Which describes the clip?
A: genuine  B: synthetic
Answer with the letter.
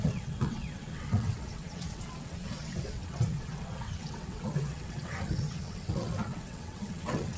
B